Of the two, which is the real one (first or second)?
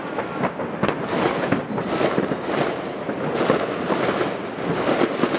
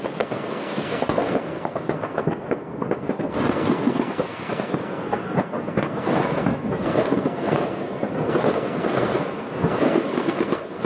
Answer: first